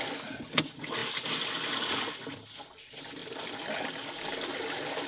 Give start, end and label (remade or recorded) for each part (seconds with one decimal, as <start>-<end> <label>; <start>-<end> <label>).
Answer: 0.0-5.1 recorded